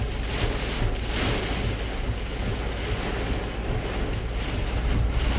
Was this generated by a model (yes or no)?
no